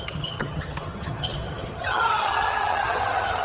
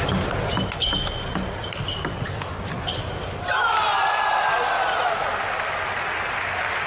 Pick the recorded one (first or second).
second